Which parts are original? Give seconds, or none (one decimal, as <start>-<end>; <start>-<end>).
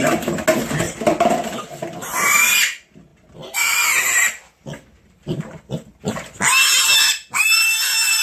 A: 0.0-5.0; 5.6-8.2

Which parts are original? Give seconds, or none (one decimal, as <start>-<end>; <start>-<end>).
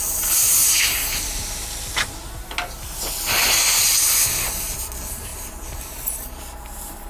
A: 0.0-4.0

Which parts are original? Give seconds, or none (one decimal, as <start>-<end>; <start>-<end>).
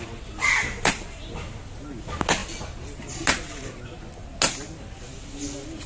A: 0.0-0.6; 1.2-5.9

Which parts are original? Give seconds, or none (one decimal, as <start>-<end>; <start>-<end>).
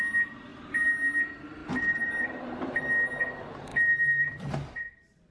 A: 0.0-1.6; 2.8-3.7; 4.8-5.3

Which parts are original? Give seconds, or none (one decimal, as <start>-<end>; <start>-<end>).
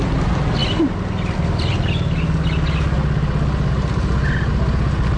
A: 0.0-5.2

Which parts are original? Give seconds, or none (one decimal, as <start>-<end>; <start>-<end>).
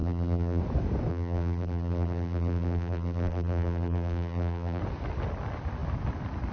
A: 0.6-1.1; 4.8-6.5